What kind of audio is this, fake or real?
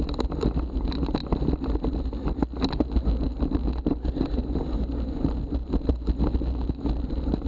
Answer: real